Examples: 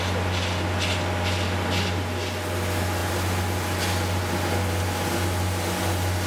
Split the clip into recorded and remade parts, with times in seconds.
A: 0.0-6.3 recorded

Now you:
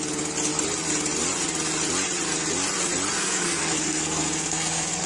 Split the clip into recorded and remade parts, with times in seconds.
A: 0.0-3.2 recorded; 3.2-5.1 remade

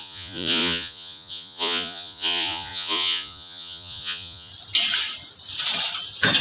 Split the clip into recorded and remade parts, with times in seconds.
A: 0.0-4.5 remade; 4.5-6.4 recorded

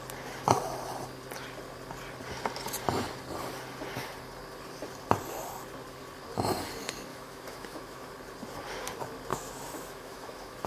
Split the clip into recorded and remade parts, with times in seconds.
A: 0.0-7.1 recorded; 7.1-8.1 remade; 8.1-9.3 recorded; 9.3-10.7 remade

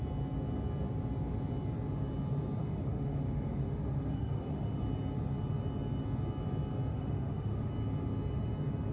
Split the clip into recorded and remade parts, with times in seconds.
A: 0.0-2.6 recorded; 2.6-4.8 remade; 4.8-6.9 recorded; 6.9-7.7 remade; 7.7-8.9 recorded

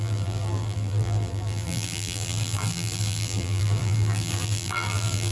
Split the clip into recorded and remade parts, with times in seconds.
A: 0.0-5.3 remade

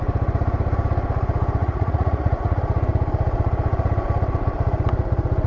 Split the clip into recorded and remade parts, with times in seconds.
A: 0.0-1.6 recorded; 1.6-2.6 remade; 2.6-5.5 recorded

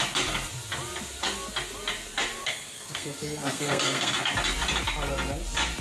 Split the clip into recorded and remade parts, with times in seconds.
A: 0.0-2.4 recorded; 2.4-4.1 remade; 4.1-5.8 recorded